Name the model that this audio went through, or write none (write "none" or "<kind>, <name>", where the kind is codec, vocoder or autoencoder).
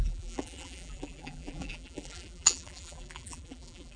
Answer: vocoder, BigVGAN v2